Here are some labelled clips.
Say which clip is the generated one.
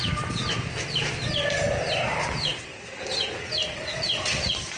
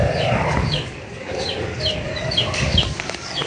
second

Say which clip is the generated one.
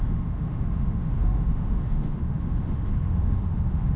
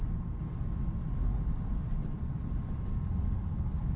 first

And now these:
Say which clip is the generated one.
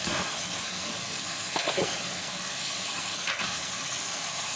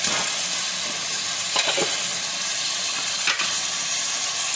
first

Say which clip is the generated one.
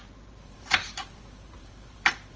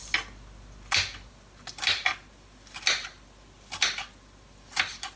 first